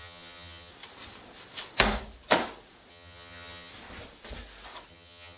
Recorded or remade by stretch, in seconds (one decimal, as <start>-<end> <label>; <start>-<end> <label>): 0.0-0.7 remade; 0.7-2.9 recorded; 2.9-3.7 remade; 3.7-4.9 recorded; 4.9-5.4 remade